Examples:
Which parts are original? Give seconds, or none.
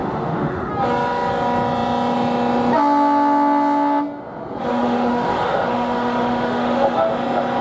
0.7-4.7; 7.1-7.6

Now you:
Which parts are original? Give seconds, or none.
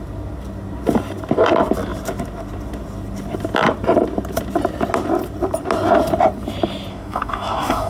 0.0-6.9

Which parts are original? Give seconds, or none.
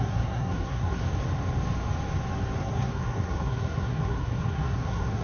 1.0-2.6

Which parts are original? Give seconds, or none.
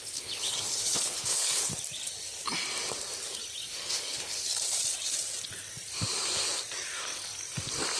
1.7-3.7; 4.4-8.0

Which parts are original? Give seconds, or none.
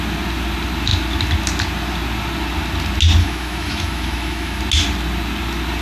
0.0-3.2; 4.6-5.8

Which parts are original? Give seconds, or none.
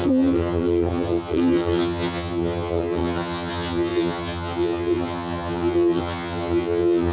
none